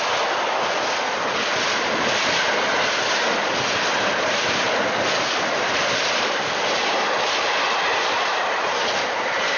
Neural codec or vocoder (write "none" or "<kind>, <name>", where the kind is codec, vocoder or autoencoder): none